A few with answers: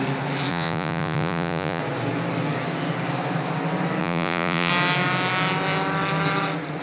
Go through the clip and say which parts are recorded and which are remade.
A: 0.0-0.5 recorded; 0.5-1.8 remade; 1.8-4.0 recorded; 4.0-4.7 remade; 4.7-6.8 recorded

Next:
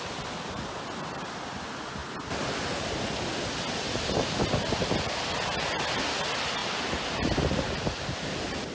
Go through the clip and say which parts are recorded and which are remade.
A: 0.0-8.7 recorded

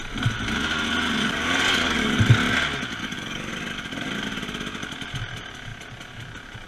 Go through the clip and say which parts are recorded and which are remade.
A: 0.0-1.2 recorded; 1.2-2.2 remade; 2.2-3.0 recorded; 3.0-3.5 remade; 3.5-6.7 recorded

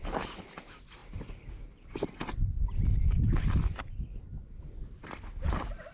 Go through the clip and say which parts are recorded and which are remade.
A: 0.0-5.9 recorded

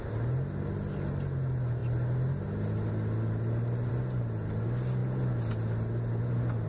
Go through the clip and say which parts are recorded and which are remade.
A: 0.0-6.7 recorded

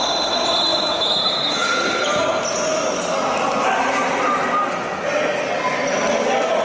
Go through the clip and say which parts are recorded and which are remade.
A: 0.0-0.7 recorded; 0.7-1.8 remade; 1.8-6.6 recorded